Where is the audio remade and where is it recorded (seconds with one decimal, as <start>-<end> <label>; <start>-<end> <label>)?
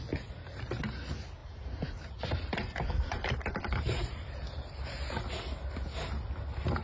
0.0-1.4 recorded; 1.4-5.2 remade; 5.2-6.8 recorded